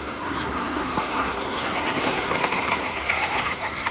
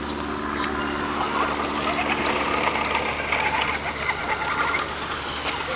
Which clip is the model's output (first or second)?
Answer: first